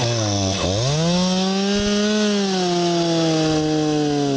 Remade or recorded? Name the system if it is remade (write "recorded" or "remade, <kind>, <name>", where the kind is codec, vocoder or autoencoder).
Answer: recorded